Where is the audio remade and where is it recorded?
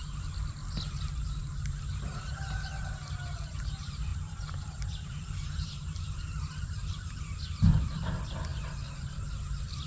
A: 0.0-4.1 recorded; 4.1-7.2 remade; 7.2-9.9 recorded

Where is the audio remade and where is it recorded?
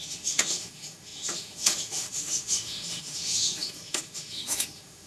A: 0.0-5.1 remade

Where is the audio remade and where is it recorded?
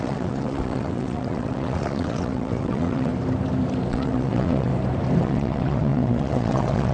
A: 0.0-3.1 remade; 3.1-3.9 recorded; 3.9-4.7 remade; 4.7-5.2 recorded; 5.2-6.9 remade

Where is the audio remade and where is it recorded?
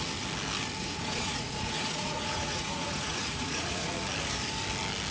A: 0.0-0.8 recorded; 0.8-3.9 remade; 3.9-5.1 recorded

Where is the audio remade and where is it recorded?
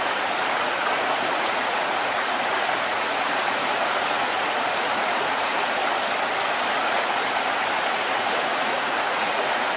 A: 0.0-5.8 remade; 5.8-6.7 recorded; 6.7-9.8 remade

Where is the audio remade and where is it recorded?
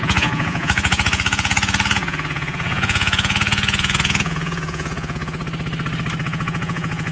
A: 0.0-5.4 remade; 5.4-6.2 recorded; 6.2-7.1 remade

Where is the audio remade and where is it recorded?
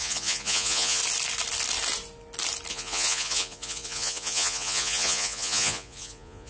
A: 0.0-1.0 remade; 1.0-2.7 recorded; 2.7-6.5 remade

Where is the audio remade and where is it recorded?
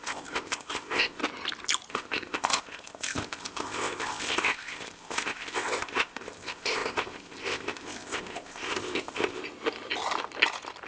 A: 0.0-1.2 remade; 1.2-1.9 recorded; 1.9-9.4 remade; 9.4-10.9 recorded